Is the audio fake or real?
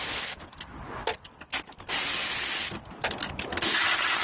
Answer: real